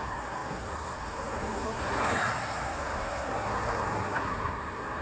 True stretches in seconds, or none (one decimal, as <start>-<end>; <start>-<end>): none